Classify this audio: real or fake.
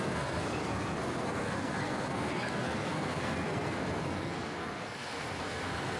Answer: fake